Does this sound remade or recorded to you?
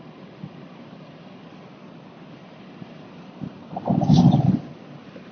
recorded